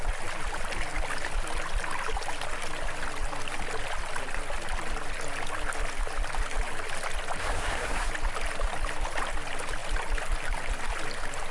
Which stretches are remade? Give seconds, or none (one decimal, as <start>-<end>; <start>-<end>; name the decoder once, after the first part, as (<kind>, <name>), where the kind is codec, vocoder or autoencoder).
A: 7.4-8.1 (codec, SNAC)